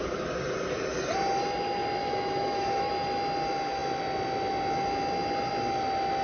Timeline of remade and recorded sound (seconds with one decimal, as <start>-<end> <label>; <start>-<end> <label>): 0.0-2.0 recorded; 2.0-2.9 remade; 2.9-6.2 recorded